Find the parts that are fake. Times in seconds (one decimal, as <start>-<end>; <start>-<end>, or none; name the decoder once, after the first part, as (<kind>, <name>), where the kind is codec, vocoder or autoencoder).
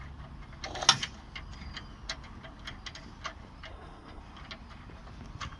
3.7-4.2 (codec, SNAC)